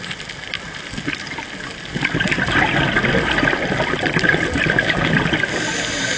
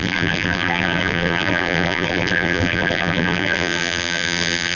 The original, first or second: first